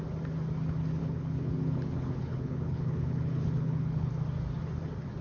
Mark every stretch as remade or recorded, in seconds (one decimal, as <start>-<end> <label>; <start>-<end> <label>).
0.0-1.0 recorded; 1.0-4.1 remade; 4.1-5.2 recorded